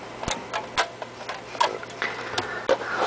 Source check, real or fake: real